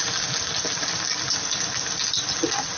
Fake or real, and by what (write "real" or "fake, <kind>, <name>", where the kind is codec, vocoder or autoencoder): real